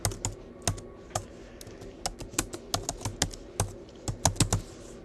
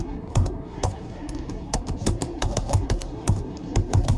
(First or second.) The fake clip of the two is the second